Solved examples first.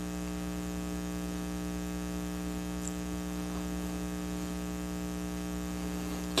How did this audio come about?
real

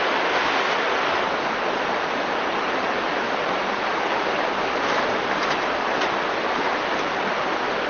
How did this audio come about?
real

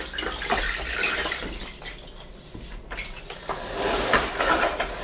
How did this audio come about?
real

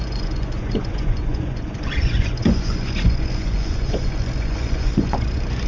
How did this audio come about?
fake